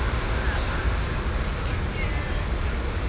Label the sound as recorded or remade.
recorded